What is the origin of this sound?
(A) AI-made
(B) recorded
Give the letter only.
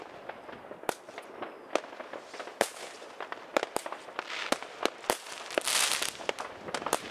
B